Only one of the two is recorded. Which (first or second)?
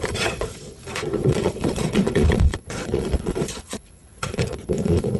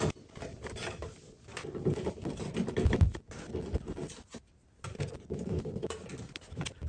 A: second